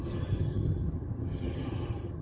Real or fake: fake